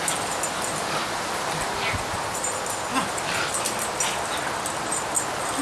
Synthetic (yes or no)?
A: no